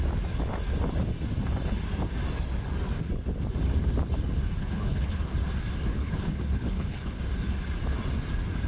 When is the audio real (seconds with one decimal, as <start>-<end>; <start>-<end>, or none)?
0.0-4.6; 5.3-5.9; 7.2-8.7